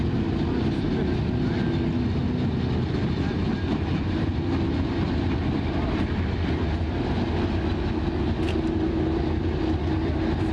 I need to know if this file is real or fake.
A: real